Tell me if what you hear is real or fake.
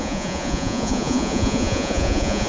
fake